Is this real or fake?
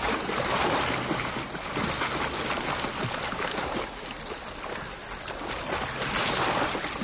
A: real